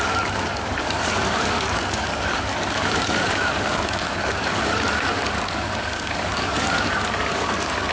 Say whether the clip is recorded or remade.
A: remade